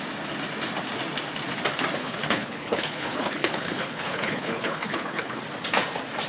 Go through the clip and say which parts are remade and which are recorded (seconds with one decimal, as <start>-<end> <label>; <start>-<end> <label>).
0.0-2.0 recorded; 2.0-5.4 remade; 5.4-6.3 recorded